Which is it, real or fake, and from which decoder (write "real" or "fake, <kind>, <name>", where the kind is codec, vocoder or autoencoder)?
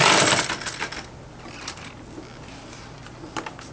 real